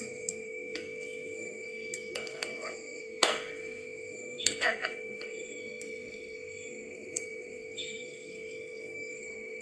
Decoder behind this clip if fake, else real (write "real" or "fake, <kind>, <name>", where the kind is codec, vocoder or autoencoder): fake, codec, SNAC